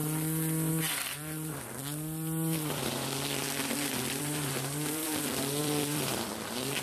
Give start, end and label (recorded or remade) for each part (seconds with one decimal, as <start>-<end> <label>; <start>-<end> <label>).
0.0-0.7 recorded; 0.7-6.8 remade